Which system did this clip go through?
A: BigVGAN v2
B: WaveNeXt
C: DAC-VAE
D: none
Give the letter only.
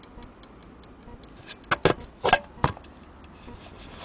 D